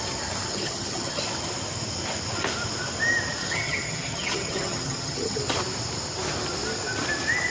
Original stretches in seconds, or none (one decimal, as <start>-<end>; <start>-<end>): 0.0-0.5; 1.2-3.4; 5.4-7.5